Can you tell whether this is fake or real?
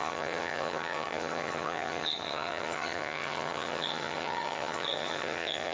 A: fake